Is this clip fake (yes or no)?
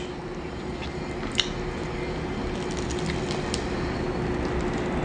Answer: no